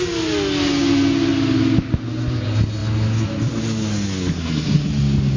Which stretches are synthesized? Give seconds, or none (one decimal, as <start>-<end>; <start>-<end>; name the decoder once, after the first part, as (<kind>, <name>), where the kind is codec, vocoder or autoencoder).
4.3-4.9 (codec, SNAC)